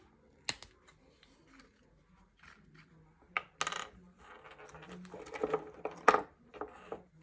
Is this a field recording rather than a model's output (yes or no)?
yes